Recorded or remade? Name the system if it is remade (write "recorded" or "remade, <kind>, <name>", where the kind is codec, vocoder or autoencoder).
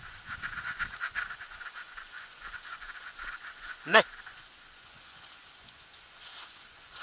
remade, vocoder, Vocos